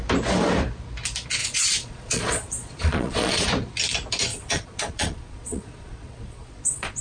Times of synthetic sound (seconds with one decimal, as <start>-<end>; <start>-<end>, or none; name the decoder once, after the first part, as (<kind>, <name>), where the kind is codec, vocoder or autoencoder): 1.4-3.5 (vocoder, Vocos); 4.3-7.0